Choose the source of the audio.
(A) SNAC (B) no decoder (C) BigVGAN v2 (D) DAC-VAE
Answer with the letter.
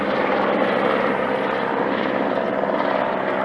B